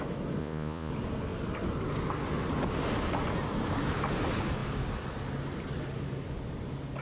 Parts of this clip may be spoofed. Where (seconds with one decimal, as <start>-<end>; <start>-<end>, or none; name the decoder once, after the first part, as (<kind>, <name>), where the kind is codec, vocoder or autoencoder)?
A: 0.4-0.9 (vocoder, Vocos)